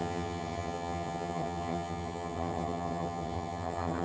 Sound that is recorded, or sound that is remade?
remade